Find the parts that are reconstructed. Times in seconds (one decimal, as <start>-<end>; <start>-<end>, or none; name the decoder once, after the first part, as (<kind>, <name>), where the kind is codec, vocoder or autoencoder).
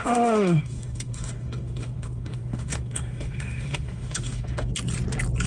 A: 0.0-4.7 (autoencoder, DAC-VAE)